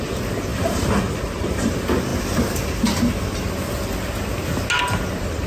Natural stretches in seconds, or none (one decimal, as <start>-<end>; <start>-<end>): 0.0-0.5; 1.7-5.5